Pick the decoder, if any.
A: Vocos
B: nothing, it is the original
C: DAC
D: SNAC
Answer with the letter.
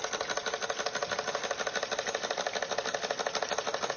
B